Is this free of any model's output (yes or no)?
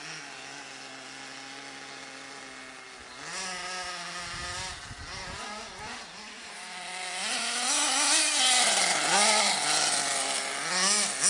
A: yes